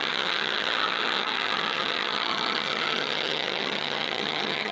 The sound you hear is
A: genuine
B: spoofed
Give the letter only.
B